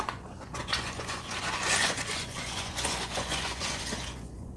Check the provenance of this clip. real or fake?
fake